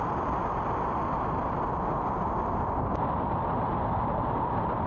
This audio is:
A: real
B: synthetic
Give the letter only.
A